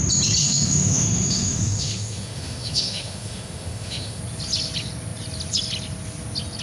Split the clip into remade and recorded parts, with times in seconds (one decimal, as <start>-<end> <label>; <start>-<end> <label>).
0.0-0.4 recorded; 0.4-4.2 remade; 4.2-6.6 recorded